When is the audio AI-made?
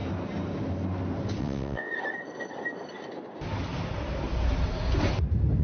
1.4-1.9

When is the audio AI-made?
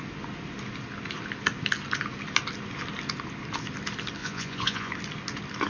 4.2-4.9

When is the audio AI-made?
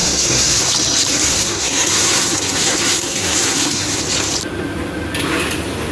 0.0-0.6; 1.3-4.0